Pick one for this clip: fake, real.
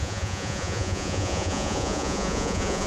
fake